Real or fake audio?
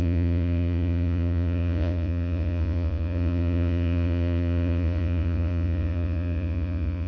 fake